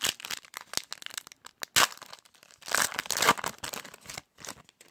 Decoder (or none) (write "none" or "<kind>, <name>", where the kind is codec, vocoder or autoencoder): none